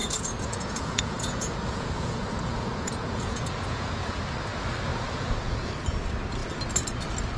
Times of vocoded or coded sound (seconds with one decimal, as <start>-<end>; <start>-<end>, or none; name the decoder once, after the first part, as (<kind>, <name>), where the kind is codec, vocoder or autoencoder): 0.0-4.2 (vocoder, Vocos); 4.9-5.7